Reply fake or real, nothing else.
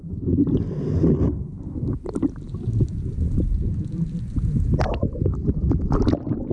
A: real